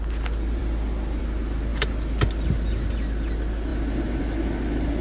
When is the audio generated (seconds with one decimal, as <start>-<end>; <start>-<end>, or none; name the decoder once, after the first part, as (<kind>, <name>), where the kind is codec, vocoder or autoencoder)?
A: none